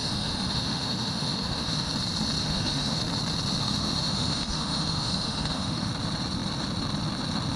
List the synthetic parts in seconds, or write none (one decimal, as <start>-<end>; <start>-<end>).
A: 0.0-1.9; 2.4-3.0; 3.6-5.9